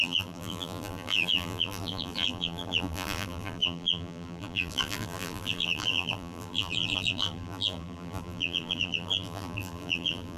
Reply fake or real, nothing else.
fake